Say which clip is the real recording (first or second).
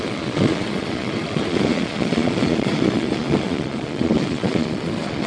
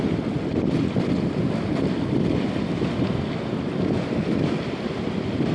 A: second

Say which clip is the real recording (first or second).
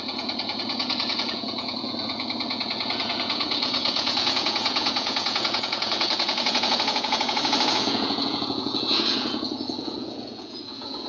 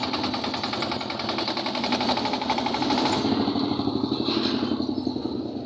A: second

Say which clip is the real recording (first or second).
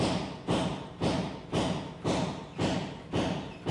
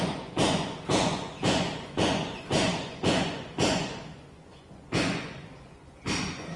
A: first